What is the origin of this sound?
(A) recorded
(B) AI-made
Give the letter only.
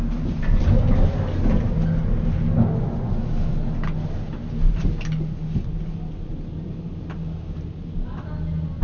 A